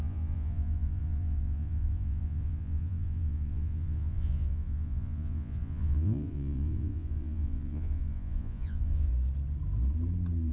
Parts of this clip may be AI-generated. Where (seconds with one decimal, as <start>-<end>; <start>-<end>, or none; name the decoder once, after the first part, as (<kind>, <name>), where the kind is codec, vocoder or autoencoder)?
0.0-9.1 (vocoder, Vocos)